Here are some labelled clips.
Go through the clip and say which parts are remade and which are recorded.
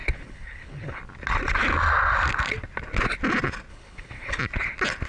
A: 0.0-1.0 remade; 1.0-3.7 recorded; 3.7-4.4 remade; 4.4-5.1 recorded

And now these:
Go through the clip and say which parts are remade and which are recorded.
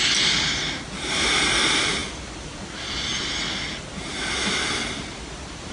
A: 0.0-5.7 recorded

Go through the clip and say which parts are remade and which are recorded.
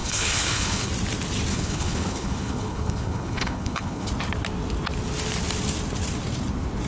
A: 0.0-0.9 remade; 0.9-1.5 recorded; 1.5-4.1 remade; 4.1-6.9 recorded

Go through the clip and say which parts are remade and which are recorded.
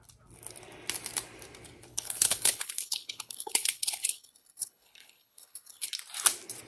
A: 0.0-1.9 recorded; 1.9-5.9 remade; 5.9-6.7 recorded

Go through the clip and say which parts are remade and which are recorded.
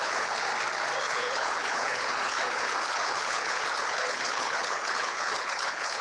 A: 0.0-0.5 remade; 0.5-1.0 recorded; 1.0-6.0 remade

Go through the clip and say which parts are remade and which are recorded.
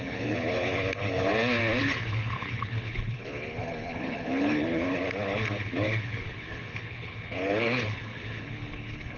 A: 0.0-1.3 remade; 1.3-1.8 recorded; 1.8-9.2 remade